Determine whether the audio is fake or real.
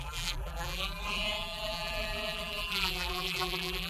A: fake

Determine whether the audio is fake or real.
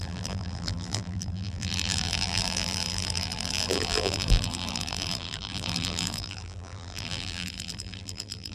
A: fake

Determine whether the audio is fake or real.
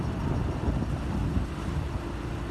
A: real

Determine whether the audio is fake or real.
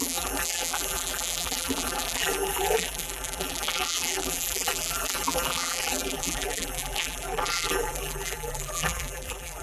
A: fake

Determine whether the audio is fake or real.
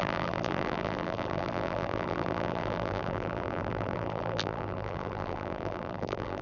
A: fake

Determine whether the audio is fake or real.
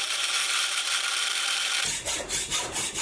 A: fake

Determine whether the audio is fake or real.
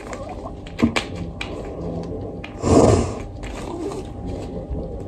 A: real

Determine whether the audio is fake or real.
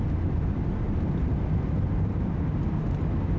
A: real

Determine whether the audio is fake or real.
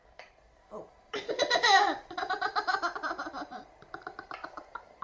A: fake